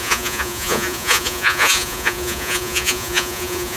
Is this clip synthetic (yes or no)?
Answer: yes